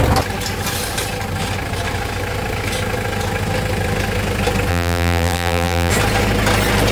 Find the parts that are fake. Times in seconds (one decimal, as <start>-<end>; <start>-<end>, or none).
4.7-5.9